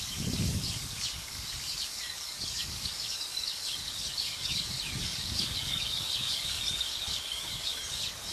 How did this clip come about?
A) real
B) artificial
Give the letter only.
B